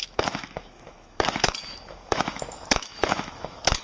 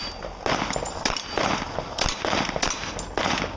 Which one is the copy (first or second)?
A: first